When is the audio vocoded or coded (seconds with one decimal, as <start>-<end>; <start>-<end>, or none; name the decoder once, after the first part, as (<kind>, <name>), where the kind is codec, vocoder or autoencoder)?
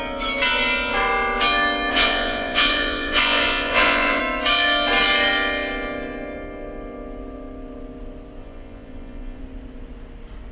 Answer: 1.9-4.2 (vocoder, Vocos); 8.4-9.4